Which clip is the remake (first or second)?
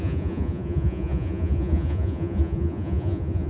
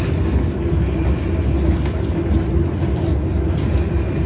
first